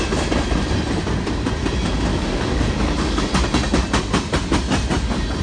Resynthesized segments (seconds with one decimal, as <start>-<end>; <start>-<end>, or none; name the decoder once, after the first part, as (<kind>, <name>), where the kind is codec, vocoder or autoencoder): 2.1-3.2 (codec, DAC)